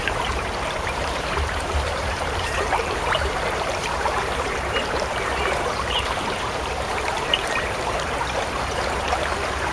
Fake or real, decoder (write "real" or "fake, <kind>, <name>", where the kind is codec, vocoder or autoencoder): fake, vocoder, BigVGAN v2